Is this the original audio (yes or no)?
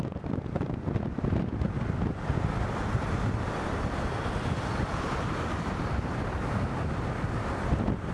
yes